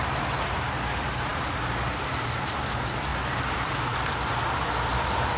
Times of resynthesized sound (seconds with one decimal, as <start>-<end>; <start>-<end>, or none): 0.0-0.7; 3.1-3.7